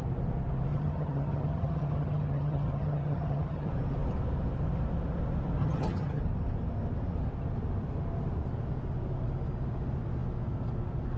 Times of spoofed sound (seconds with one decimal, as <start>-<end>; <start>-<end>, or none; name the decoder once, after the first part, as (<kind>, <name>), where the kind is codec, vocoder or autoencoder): 0.7-3.7 (vocoder, HiFi-GAN); 5.6-6.2